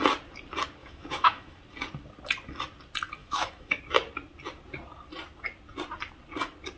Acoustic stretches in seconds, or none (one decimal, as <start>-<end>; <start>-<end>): 0.0-0.8; 1.6-3.2; 3.8-6.8

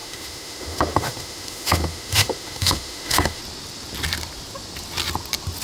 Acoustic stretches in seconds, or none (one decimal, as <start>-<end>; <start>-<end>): 3.4-5.6

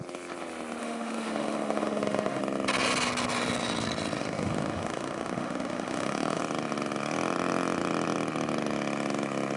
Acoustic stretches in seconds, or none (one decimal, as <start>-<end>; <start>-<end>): 0.0-0.8; 2.4-4.2; 6.4-9.6